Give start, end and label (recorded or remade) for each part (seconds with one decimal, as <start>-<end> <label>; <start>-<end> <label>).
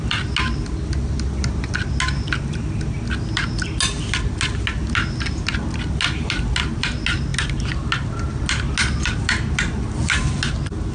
0.0-10.9 recorded